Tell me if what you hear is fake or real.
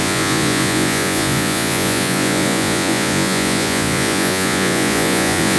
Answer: fake